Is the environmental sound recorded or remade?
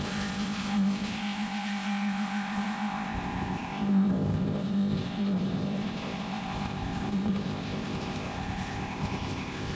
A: remade